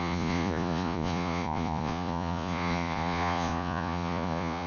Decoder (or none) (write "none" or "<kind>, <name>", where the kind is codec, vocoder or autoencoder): vocoder, Vocos